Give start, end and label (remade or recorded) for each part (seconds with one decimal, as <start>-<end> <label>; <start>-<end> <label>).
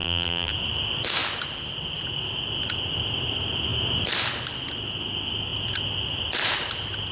0.0-0.5 remade; 0.5-7.1 recorded